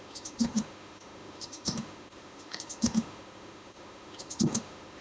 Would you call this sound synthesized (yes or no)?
yes